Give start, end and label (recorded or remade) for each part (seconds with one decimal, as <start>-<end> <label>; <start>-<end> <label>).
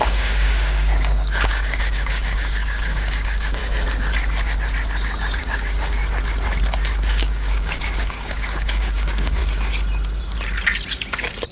0.0-3.6 remade; 3.6-5.4 recorded; 5.4-6.0 remade; 6.0-7.1 recorded; 7.1-9.4 remade; 9.4-11.5 recorded